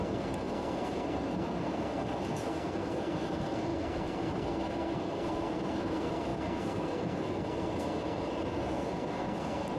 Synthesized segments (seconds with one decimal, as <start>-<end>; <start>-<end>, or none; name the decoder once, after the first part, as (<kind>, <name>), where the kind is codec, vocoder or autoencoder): 0.0-9.8 (codec, SNAC)